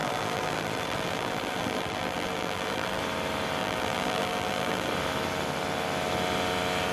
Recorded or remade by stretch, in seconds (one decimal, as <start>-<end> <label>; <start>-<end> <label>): 0.0-3.0 remade; 3.0-3.6 recorded; 3.6-4.9 remade; 4.9-6.9 recorded